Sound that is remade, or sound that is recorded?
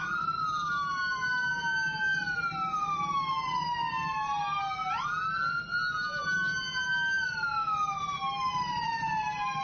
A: recorded